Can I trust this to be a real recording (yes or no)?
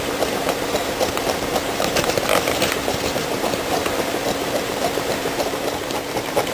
no